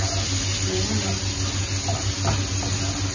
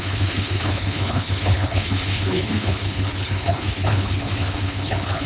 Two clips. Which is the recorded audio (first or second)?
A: first